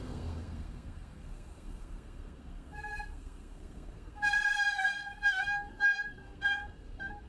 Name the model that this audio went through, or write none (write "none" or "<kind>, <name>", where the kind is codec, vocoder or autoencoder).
codec, SNAC